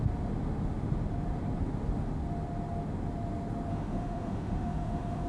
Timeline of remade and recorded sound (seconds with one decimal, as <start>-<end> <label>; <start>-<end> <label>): 0.0-3.7 recorded; 3.7-5.3 remade